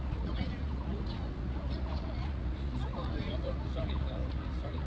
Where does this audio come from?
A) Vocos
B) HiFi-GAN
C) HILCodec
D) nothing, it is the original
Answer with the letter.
A